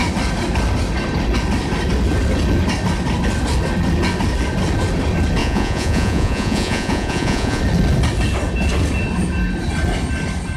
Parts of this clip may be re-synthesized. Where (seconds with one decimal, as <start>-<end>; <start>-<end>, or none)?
5.4-7.6